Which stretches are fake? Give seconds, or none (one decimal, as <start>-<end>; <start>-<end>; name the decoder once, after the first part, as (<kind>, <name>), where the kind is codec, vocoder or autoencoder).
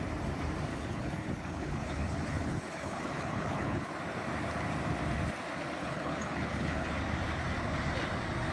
0.7-3.9 (codec, HILCodec); 5.8-6.9